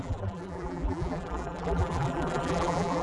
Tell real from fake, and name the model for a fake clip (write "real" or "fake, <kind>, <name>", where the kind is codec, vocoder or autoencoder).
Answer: fake, vocoder, BigVGAN v2